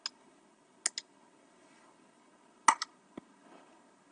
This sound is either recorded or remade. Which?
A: recorded